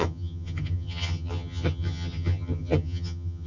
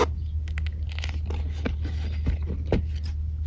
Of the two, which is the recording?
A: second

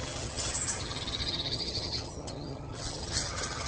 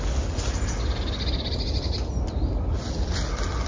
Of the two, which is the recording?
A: second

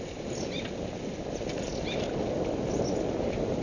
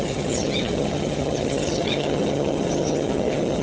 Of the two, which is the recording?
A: first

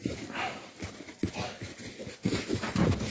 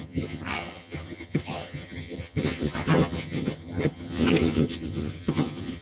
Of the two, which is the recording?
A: first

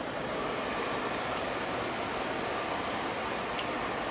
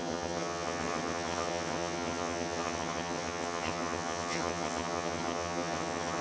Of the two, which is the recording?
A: first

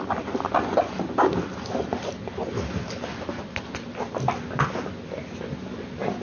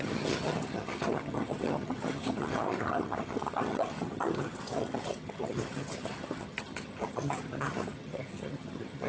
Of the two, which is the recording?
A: first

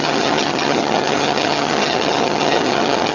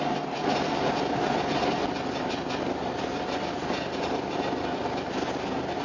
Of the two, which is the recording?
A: second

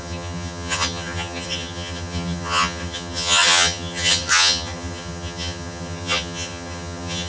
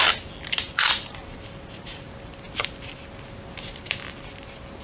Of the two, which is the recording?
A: second